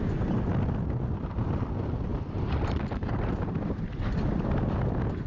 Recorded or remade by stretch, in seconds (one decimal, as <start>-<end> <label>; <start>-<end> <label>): 0.0-5.3 recorded